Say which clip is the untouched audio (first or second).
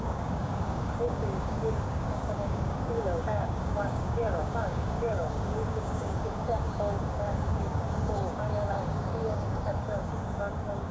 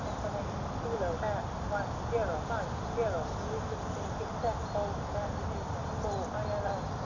second